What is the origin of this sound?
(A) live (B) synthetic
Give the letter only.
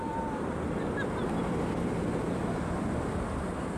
B